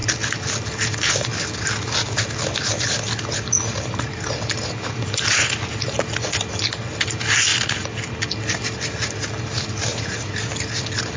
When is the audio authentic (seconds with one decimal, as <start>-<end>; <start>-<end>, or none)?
0.0-9.9; 10.5-11.2